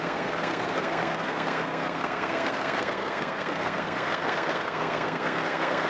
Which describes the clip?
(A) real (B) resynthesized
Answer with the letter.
B